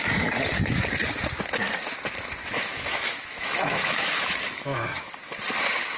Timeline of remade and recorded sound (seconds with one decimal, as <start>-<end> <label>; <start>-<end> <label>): 0.0-2.4 recorded; 2.4-5.1 remade; 5.1-6.0 recorded

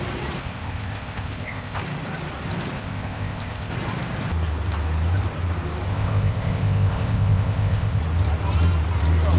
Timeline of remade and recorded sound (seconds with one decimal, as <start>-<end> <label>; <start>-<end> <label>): 0.0-0.4 recorded; 0.4-1.8 remade; 1.8-2.8 recorded; 2.8-3.7 remade; 3.7-5.9 recorded; 5.9-8.0 remade; 8.0-9.4 recorded

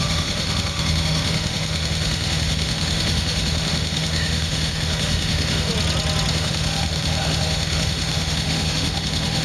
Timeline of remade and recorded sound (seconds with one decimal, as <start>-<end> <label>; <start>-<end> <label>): 0.0-5.7 remade; 5.7-6.3 recorded; 6.3-9.4 remade

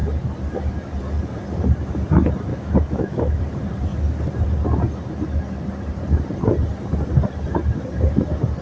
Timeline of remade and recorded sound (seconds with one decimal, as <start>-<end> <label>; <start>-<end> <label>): 0.0-2.5 recorded; 2.5-3.4 remade; 3.4-8.6 recorded

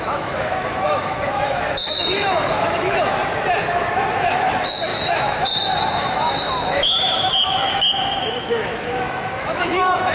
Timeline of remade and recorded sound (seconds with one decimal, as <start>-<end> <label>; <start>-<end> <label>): 0.0-3.2 remade; 3.2-4.1 recorded; 4.1-10.1 remade

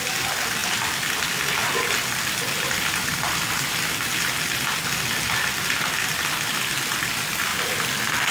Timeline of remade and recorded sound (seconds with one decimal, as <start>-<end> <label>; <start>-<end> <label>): 0.0-8.3 recorded

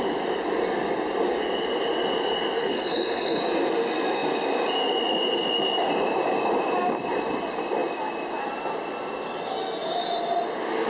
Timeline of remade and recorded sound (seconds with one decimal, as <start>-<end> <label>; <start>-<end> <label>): 0.0-2.6 recorded; 2.6-3.4 remade; 3.4-10.9 recorded